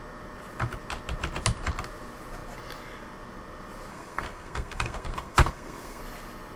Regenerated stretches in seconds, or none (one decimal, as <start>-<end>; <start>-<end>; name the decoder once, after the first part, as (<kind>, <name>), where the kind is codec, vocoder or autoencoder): 3.9-6.0 (codec, SNAC)